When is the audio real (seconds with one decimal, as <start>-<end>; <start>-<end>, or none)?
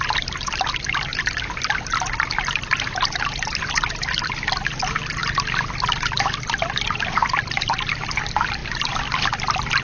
0.0-9.8